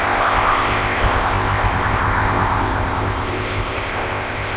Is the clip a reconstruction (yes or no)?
yes